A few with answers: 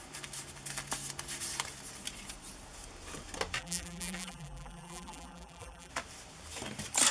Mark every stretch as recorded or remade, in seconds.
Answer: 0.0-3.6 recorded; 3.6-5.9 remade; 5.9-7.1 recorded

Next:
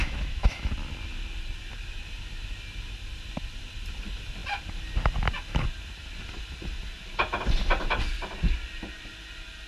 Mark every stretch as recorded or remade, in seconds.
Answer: 0.0-0.7 remade; 0.7-9.7 recorded

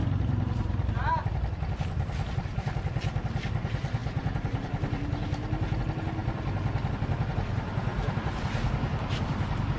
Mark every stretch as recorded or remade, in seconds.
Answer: 0.0-0.9 remade; 0.9-4.0 recorded; 4.0-5.8 remade; 5.8-7.9 recorded; 7.9-9.3 remade; 9.3-9.8 recorded

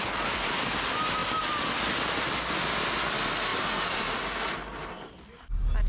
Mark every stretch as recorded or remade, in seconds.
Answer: 0.0-5.9 recorded